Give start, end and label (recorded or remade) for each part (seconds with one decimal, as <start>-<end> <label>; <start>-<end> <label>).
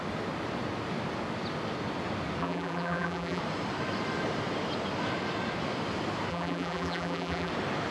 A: 0.0-2.4 recorded; 2.4-3.4 remade; 3.4-6.3 recorded; 6.3-7.5 remade; 7.5-7.9 recorded